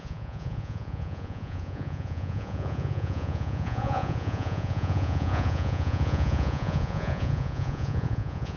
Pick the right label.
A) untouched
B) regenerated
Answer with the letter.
B